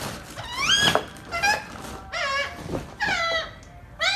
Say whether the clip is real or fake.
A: real